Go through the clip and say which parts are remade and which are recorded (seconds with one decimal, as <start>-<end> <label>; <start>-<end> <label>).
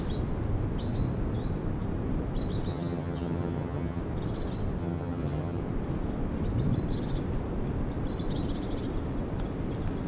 0.0-2.7 recorded; 2.7-4.0 remade; 4.0-4.8 recorded; 4.8-5.6 remade; 5.6-10.1 recorded